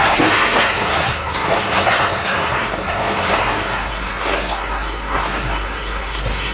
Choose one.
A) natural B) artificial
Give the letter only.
B